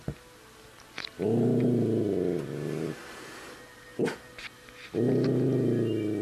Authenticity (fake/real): real